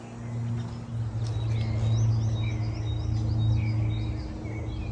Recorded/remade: recorded